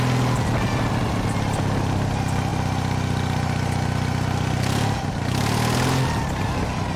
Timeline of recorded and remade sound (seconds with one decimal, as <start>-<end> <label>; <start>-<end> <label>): 0.0-7.0 recorded